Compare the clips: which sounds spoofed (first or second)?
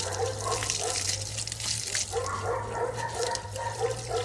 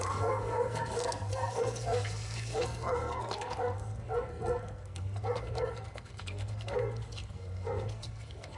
second